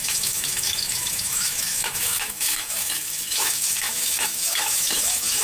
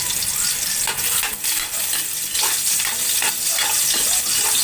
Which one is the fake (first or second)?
first